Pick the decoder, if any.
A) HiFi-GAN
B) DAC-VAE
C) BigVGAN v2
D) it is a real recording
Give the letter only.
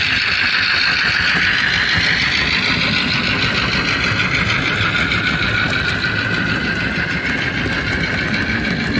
D